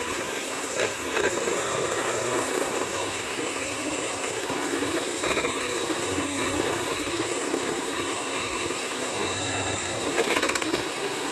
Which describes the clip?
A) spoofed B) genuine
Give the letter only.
A